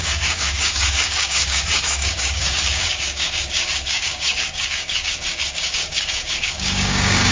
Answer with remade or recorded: remade